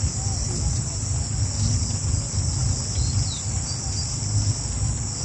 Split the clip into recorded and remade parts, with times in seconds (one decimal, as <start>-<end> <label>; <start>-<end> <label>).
0.0-5.2 recorded